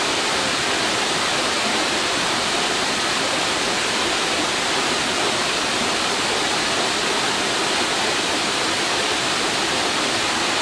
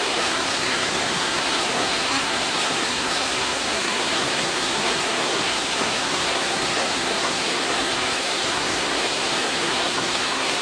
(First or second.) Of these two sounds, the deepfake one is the second